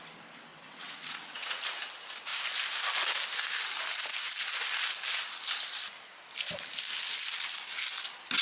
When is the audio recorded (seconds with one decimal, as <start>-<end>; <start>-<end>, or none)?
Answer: 0.0-0.5; 1.6-8.4